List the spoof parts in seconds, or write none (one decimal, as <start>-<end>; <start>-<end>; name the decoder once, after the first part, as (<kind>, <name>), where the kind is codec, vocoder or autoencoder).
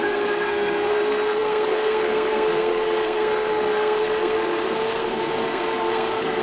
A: 0.0-6.4 (codec, SNAC)